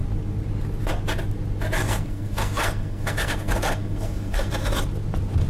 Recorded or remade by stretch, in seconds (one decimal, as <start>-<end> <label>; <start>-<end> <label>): 0.0-1.8 recorded; 1.8-4.5 remade; 4.5-5.5 recorded